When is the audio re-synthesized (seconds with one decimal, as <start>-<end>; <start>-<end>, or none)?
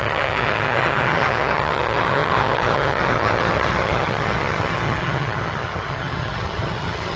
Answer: 0.0-7.2